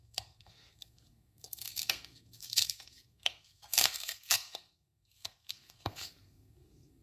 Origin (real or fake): fake